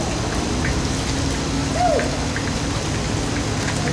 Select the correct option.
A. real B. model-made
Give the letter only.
A